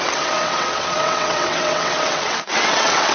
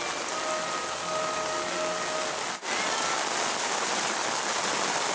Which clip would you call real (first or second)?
second